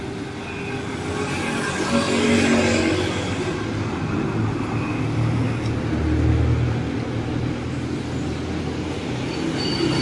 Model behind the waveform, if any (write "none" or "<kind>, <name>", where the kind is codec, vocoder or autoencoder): none